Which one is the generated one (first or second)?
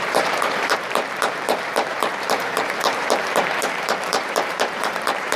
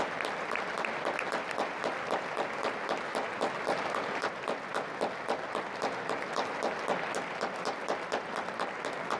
first